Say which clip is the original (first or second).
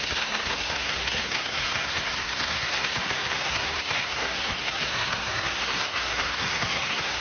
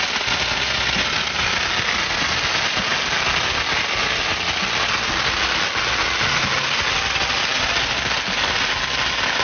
second